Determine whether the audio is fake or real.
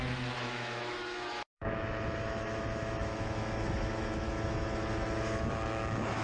fake